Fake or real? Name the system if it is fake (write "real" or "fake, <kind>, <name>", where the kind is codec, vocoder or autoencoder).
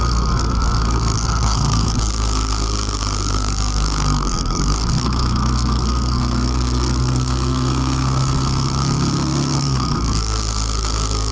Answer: fake, codec, SNAC